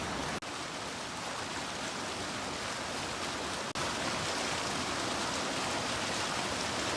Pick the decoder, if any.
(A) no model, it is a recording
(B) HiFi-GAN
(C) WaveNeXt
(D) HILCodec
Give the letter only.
A